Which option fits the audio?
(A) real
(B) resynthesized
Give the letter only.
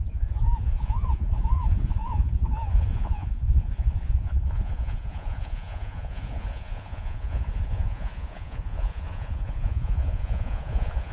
B